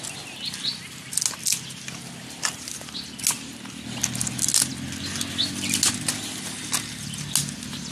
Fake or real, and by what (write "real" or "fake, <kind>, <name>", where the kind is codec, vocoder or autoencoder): real